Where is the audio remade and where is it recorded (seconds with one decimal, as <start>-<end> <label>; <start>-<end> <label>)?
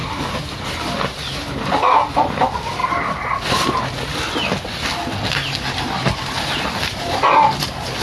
0.0-8.0 recorded